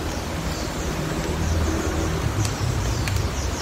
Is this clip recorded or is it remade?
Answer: remade